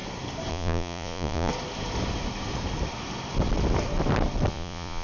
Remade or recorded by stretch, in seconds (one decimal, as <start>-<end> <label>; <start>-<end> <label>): 0.0-0.5 recorded; 0.5-1.5 remade; 1.5-4.5 recorded; 4.5-5.0 remade